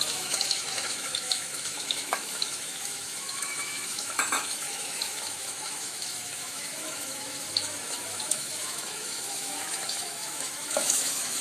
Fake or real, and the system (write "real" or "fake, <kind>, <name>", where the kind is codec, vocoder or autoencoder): fake, autoencoder, DAC-VAE